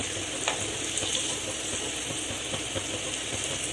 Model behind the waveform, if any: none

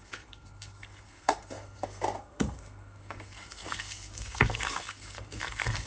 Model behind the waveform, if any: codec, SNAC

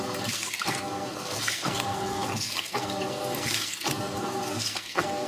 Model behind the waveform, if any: codec, SNAC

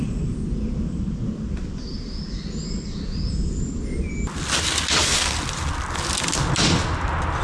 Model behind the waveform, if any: none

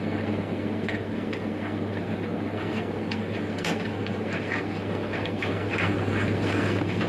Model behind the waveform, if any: codec, SNAC